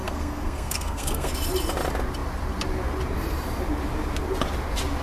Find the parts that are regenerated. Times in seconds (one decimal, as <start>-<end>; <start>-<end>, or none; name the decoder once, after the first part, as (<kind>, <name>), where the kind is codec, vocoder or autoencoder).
0.0-1.3 (codec, SNAC)